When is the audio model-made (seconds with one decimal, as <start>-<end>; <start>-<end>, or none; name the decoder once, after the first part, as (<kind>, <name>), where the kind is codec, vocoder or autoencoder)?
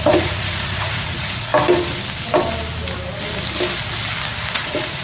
0.0-1.5 (vocoder, Vocos); 4.5-5.0